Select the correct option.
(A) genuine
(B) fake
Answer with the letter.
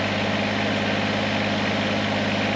A